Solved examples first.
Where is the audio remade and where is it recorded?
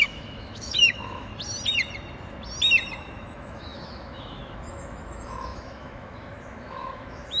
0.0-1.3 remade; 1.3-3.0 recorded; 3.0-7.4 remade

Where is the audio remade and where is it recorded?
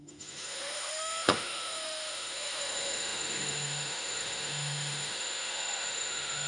0.0-6.5 remade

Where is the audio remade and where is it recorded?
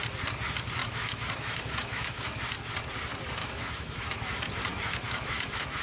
0.0-0.8 recorded; 0.8-2.4 remade; 2.4-3.4 recorded; 3.4-4.2 remade; 4.2-4.7 recorded; 4.7-5.8 remade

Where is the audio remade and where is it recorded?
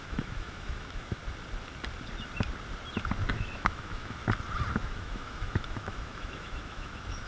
0.0-1.2 remade; 1.2-3.3 recorded; 3.3-4.2 remade; 4.2-4.8 recorded; 4.8-7.3 remade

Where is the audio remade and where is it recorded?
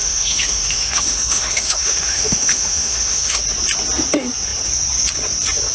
0.0-3.4 remade; 3.4-5.7 recorded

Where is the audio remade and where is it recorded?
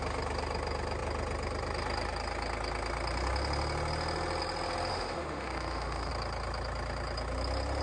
0.0-4.9 recorded; 4.9-6.1 remade; 6.1-7.8 recorded